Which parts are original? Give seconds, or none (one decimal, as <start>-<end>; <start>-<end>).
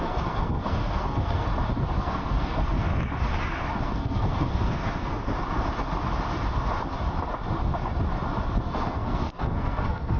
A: 1.5-2.0; 2.9-3.8; 5.2-8.5